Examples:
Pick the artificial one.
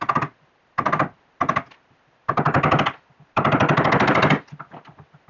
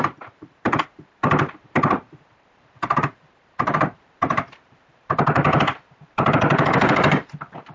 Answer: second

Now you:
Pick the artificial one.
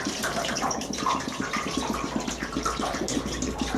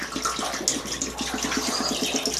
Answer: first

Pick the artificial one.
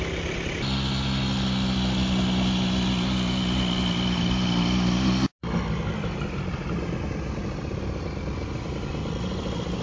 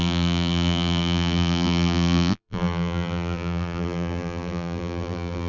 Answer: second